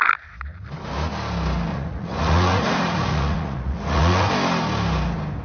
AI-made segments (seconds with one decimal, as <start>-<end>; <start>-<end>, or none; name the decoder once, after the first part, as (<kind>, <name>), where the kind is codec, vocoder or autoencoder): 1.7-4.3 (vocoder, Vocos)